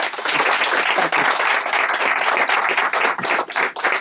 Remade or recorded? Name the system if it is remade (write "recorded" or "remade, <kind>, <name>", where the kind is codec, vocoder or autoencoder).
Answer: recorded